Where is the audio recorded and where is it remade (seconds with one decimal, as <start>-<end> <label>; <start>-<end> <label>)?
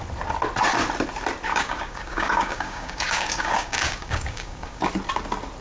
0.0-1.5 recorded; 1.5-4.9 remade; 4.9-5.6 recorded